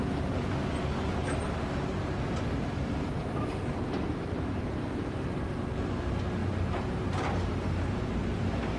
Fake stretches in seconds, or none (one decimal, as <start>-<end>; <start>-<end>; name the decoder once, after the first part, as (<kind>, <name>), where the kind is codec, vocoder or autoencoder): 3.2-5.6 (vocoder, BigVGAN v2); 6.4-8.0